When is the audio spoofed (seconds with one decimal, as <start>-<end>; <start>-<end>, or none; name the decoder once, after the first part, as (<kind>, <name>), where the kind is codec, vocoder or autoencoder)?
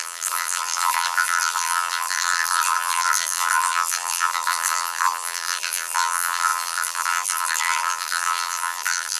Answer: 0.0-9.2 (vocoder, BigVGAN v2)